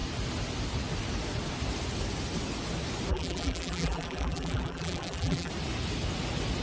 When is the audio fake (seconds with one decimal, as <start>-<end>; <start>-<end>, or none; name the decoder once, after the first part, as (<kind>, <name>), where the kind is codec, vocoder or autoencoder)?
3.1-5.5 (vocoder, BigVGAN v2)